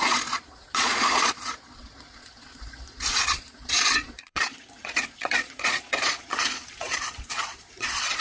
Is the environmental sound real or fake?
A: fake